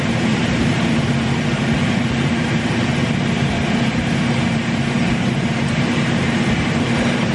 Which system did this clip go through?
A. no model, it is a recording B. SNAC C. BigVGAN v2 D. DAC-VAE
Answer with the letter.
C